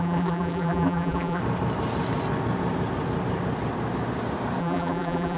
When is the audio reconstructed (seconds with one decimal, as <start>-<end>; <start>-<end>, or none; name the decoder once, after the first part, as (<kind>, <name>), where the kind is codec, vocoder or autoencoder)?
0.0-1.4 (vocoder, BigVGAN v2); 4.6-5.4